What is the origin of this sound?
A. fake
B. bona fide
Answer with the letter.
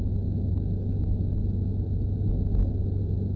A